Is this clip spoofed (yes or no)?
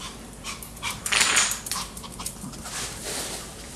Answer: yes